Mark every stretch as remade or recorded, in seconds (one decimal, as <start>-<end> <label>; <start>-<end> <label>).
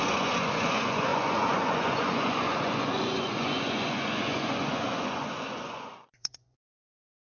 0.0-7.3 remade